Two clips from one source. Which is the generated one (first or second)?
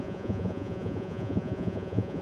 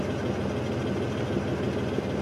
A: first